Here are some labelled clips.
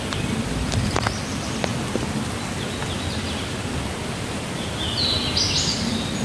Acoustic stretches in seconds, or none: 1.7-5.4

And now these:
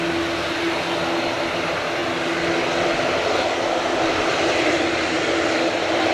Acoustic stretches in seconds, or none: 0.0-6.1

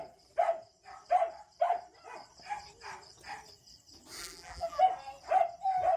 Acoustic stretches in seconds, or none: 0.0-4.2; 4.8-6.0

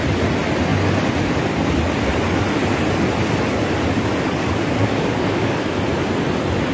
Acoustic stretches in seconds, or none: 0.0-4.8; 5.8-6.7

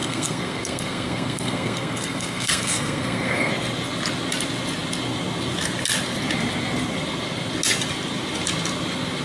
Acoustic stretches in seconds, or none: 3.5-9.2

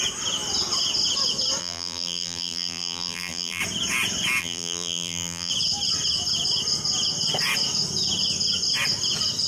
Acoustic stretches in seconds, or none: 0.0-1.6; 3.6-4.4; 5.5-9.5

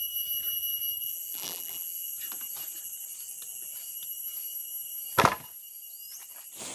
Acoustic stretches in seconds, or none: 0.0-1.0; 2.1-6.7

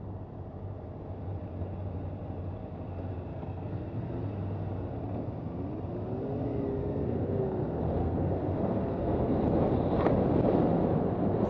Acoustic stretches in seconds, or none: 0.0-3.3; 4.1-6.8; 7.4-8.0; 9.4-11.5